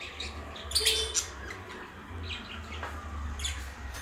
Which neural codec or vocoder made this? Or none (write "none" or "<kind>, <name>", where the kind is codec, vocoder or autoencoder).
none